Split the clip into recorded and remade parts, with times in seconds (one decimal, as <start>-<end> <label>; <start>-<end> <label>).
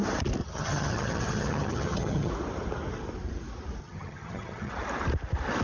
0.0-0.4 recorded; 0.4-2.3 remade; 2.3-3.8 recorded; 3.8-4.7 remade; 4.7-5.6 recorded